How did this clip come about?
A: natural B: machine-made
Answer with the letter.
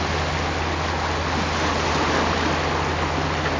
A